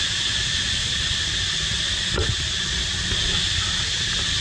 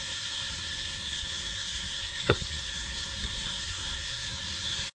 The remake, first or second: second